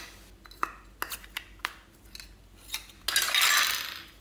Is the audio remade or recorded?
recorded